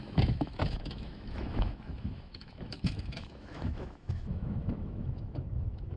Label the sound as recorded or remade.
remade